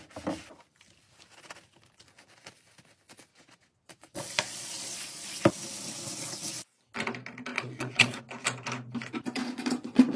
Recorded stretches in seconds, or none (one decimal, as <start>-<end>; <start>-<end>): 0.0-3.3; 5.4-7.5; 8.2-9.4